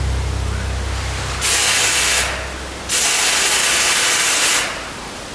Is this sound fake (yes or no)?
no